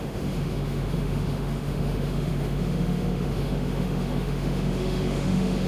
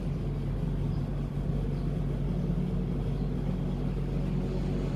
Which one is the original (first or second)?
second